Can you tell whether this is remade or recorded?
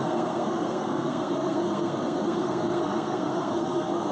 remade